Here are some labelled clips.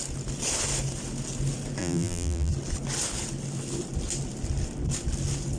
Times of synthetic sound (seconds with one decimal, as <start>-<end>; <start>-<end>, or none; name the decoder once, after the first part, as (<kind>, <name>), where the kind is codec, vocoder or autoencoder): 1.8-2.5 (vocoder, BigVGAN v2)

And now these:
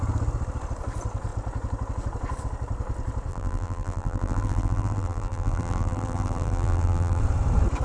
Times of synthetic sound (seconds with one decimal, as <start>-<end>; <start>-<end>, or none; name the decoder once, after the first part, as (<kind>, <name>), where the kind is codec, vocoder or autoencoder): 3.3-7.2 (vocoder, BigVGAN v2)

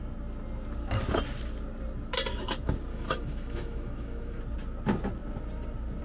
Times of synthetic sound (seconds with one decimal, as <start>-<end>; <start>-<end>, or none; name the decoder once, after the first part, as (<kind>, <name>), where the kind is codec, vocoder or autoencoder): 2.9-4.4 (autoencoder, DAC-VAE)